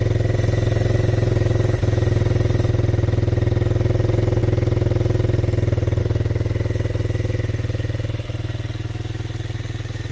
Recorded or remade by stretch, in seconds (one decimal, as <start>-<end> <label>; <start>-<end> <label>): 0.0-10.1 recorded